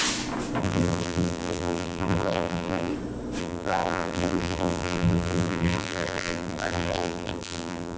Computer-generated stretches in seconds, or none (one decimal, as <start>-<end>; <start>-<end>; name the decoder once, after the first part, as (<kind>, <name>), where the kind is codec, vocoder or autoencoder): 0.6-2.9 (vocoder, BigVGAN v2); 3.4-8.0

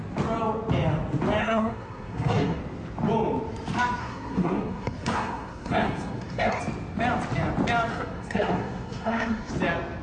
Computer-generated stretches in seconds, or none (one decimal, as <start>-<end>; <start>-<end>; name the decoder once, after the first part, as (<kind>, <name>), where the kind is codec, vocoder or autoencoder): 1.4-2.6 (codec, SNAC); 4.0-6.6; 7.9-9.5

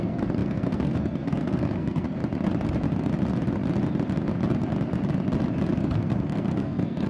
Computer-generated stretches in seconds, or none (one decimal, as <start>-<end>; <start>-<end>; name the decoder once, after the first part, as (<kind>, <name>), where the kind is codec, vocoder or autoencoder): 0.0-2.2 (codec, SNAC); 5.8-7.1

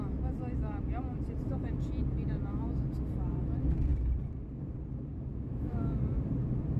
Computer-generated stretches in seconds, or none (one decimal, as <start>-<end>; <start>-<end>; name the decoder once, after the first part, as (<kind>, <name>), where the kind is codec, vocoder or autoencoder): 5.3-6.0 (autoencoder, DAC-VAE)

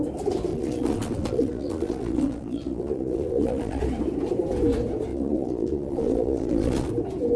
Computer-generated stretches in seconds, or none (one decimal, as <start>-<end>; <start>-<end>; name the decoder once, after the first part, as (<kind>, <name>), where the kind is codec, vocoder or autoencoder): 0.5-3.8 (vocoder, Vocos); 5.1-6.9